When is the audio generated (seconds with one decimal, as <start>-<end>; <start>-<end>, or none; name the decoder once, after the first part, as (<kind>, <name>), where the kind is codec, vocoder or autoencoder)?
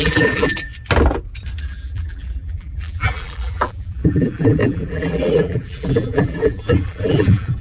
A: 0.0-0.7 (vocoder, BigVGAN v2); 1.6-7.6